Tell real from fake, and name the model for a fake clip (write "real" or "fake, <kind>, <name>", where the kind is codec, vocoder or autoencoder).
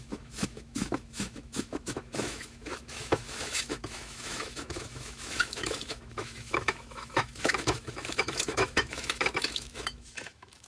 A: fake, autoencoder, DAC-VAE